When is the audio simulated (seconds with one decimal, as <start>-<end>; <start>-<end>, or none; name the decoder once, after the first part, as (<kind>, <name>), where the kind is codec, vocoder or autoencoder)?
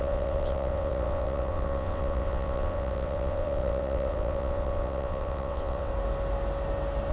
0.0-5.9 (vocoder, WaveNeXt)